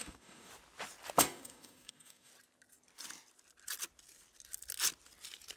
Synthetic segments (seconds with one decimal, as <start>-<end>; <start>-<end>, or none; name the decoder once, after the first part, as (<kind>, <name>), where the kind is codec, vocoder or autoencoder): 0.0-0.5 (codec, DAC); 1.2-2.3